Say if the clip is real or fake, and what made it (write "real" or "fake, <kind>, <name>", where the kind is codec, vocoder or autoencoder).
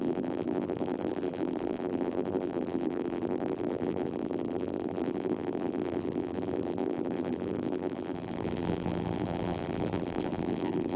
fake, vocoder, BigVGAN v2